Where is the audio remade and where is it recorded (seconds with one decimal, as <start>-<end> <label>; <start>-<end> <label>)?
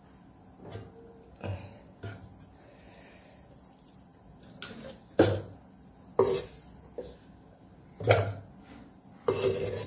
0.0-9.9 recorded